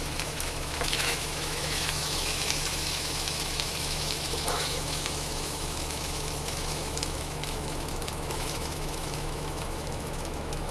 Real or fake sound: fake